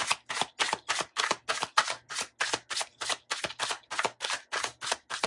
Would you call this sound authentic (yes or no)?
yes